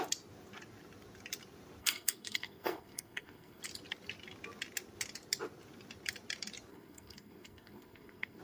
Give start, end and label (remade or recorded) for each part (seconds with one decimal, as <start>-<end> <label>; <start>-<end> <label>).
0.0-1.8 recorded; 1.8-3.6 remade; 3.6-6.7 recorded; 6.7-8.4 remade